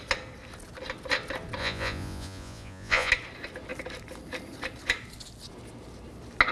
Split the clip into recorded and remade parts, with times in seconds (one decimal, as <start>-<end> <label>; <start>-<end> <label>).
0.0-1.6 recorded; 1.6-3.1 remade; 3.1-6.5 recorded